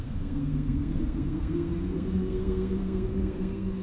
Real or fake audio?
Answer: fake